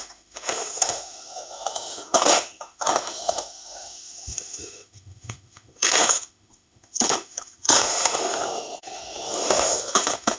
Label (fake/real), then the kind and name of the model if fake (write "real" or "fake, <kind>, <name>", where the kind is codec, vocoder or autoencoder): fake, autoencoder, DAC-VAE